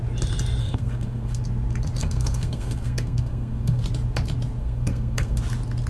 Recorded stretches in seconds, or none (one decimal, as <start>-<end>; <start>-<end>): 0.0-0.6; 1.4-2.0; 3.8-4.6; 5.4-5.9